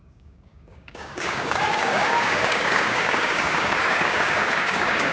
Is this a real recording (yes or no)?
no